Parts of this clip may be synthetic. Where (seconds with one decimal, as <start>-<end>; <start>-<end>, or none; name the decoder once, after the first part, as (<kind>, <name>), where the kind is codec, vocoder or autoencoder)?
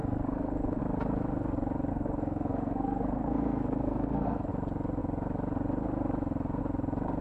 0.0-0.8 (codec, SNAC); 1.9-4.5